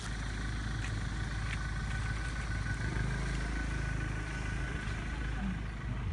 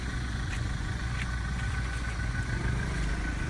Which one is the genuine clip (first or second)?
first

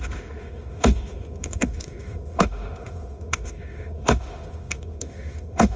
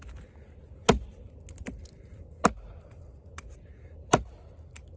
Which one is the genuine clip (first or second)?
second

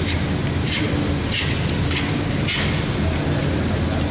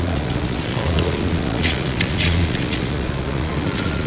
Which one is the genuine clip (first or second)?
first